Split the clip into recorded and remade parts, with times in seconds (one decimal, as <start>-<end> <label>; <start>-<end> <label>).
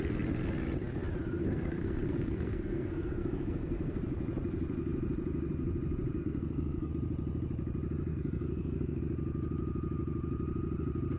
0.0-1.4 recorded; 1.4-4.0 remade; 4.0-6.2 recorded; 6.2-6.9 remade; 6.9-8.1 recorded; 8.1-9.0 remade; 9.0-11.2 recorded